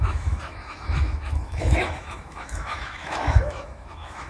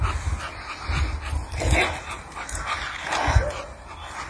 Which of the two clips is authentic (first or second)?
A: second